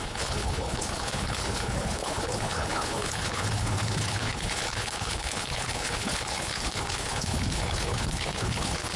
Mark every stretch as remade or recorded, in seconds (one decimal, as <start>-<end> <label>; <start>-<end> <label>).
0.0-9.0 remade